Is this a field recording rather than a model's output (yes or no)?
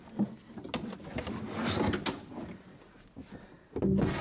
yes